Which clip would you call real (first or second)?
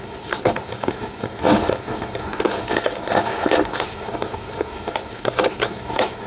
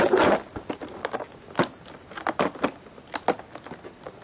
second